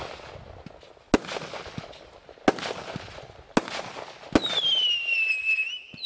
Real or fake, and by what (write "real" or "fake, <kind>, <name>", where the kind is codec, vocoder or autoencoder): real